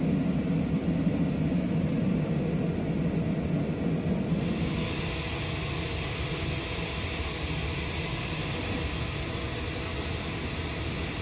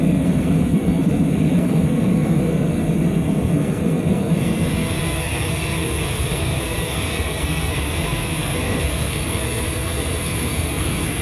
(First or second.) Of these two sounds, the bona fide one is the first